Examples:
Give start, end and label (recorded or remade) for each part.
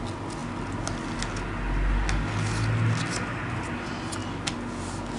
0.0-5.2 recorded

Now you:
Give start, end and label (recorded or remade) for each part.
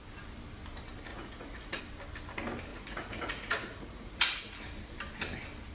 0.0-1.1 recorded; 1.1-1.8 remade; 1.8-2.7 recorded; 2.7-4.6 remade; 4.6-5.7 recorded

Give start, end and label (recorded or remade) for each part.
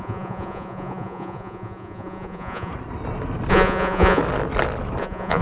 0.0-2.7 remade; 2.7-3.5 recorded; 3.5-4.2 remade; 4.2-5.0 recorded; 5.0-5.4 remade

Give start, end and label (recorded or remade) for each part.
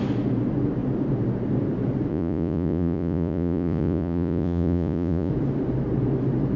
0.0-2.1 recorded; 2.1-5.3 remade; 5.3-6.6 recorded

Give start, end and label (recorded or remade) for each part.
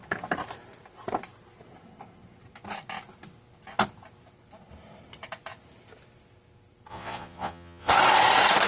0.0-6.9 recorded; 6.9-7.9 remade; 7.9-8.7 recorded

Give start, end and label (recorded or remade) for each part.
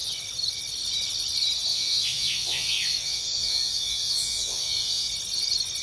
0.0-1.7 recorded; 1.7-5.1 remade; 5.1-5.8 recorded